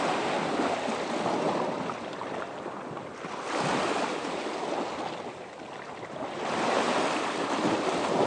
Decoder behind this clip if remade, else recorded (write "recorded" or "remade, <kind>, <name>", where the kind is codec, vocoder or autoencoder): recorded